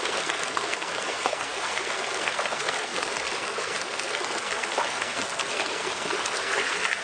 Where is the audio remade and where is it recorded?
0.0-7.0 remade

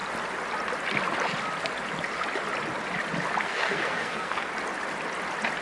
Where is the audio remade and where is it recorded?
0.0-3.4 recorded; 3.4-4.5 remade; 4.5-5.6 recorded

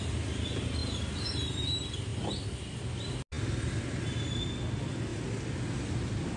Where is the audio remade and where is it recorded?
0.0-6.4 recorded

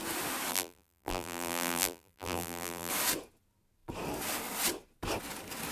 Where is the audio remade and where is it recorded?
0.0-0.5 recorded; 0.5-2.9 remade; 2.9-5.7 recorded

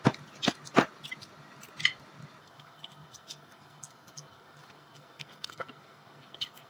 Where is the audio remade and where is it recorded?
0.0-2.4 recorded; 2.4-6.7 remade

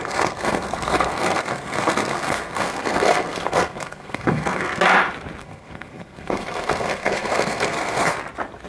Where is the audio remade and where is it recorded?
0.0-4.8 remade; 4.8-5.4 recorded; 5.4-8.2 remade; 8.2-8.7 recorded

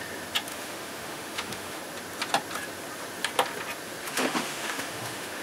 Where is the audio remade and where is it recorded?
0.0-0.5 recorded; 0.5-1.8 remade; 1.8-4.0 recorded; 4.0-5.4 remade